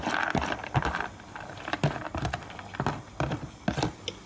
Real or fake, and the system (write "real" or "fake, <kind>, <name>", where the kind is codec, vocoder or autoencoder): real